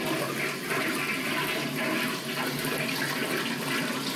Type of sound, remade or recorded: recorded